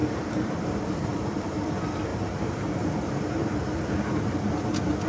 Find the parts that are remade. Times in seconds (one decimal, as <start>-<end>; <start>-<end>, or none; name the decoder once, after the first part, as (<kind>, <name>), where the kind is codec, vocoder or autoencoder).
0.0-1.6 (vocoder, BigVGAN v2); 2.1-2.9; 3.4-4.5